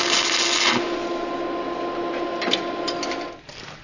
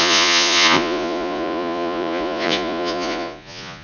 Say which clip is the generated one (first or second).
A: second